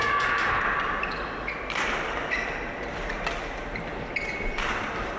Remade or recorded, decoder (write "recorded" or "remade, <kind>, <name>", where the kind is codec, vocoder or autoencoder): recorded